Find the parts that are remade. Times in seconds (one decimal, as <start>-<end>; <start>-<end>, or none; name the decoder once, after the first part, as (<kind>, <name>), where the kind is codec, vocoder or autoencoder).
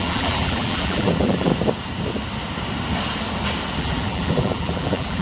0.0-1.5 (vocoder, BigVGAN v2); 3.8-5.2